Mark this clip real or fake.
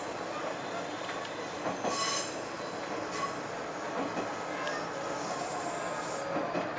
real